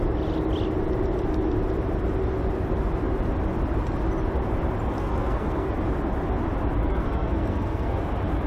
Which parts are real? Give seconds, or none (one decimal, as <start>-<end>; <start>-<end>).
0.0-5.0; 5.8-6.8; 8.0-8.5